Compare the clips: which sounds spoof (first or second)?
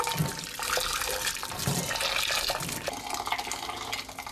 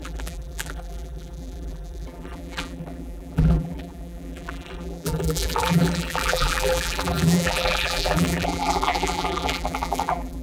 second